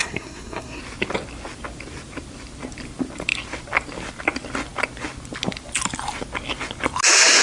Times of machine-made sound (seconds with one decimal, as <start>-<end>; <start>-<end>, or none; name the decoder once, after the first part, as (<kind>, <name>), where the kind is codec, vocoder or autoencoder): 0.0-0.8 (codec, SNAC)